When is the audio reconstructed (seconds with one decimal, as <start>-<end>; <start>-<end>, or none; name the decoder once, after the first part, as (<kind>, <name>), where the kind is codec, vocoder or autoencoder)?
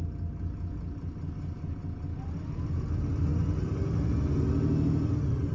none